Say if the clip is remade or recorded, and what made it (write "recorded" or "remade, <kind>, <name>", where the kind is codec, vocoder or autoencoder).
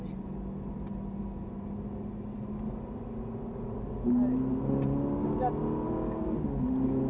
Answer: recorded